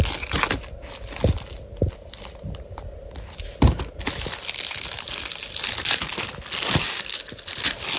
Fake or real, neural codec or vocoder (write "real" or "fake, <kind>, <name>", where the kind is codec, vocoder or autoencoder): real